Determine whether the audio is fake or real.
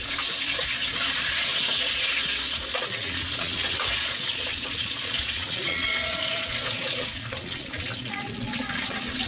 fake